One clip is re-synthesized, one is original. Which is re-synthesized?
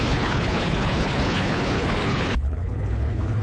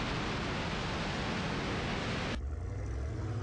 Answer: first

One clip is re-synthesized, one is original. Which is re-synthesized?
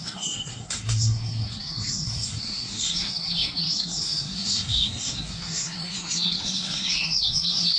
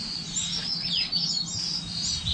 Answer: first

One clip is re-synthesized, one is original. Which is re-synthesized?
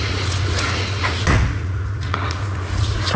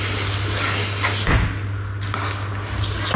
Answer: first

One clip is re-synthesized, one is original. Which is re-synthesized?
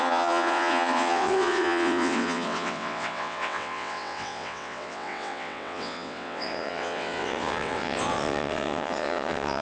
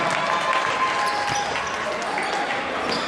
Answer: first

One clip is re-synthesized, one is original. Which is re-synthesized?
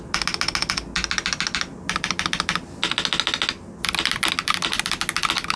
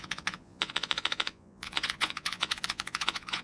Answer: second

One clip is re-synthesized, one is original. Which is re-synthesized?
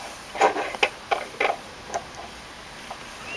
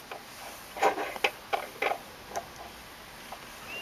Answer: first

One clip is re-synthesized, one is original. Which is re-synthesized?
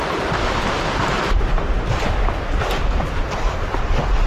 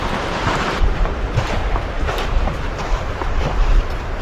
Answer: second